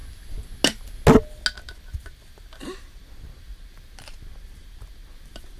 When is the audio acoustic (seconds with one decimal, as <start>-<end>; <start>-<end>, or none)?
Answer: 0.0-5.6